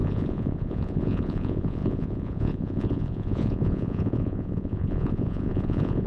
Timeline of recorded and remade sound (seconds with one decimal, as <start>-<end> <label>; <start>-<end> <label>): 0.0-6.1 remade